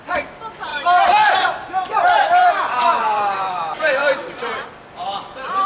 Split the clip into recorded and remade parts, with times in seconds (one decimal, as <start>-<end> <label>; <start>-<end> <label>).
0.0-0.7 recorded; 0.7-2.5 remade; 2.5-2.9 recorded; 2.9-3.6 remade; 3.6-4.0 recorded; 4.0-5.7 remade